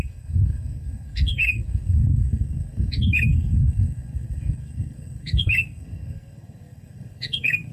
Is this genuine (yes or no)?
no